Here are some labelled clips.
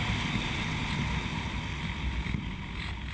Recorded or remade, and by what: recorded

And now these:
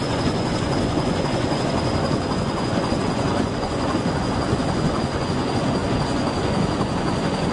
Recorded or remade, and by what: remade, vocoder, Vocos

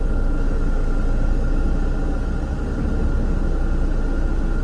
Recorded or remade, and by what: recorded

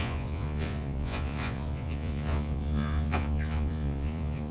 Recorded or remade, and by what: remade, vocoder, Vocos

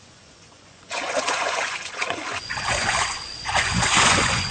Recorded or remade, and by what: remade, vocoder, Vocos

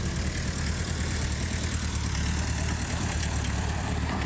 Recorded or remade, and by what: remade, vocoder, BigVGAN v2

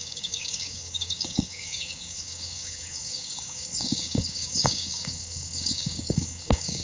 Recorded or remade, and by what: remade, codec, DAC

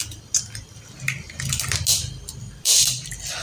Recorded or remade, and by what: recorded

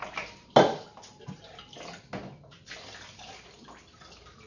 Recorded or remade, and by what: recorded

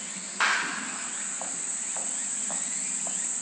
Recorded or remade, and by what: recorded